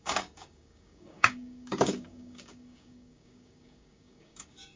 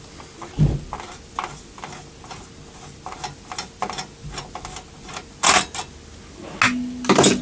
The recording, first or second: second